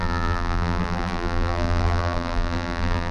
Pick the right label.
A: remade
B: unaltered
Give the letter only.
A